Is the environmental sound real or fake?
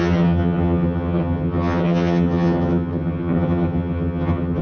fake